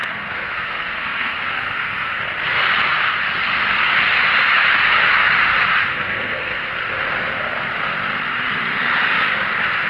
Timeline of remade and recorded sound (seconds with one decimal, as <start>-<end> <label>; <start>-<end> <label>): 0.0-2.2 remade; 2.2-5.9 recorded; 5.9-6.7 remade; 6.7-9.9 recorded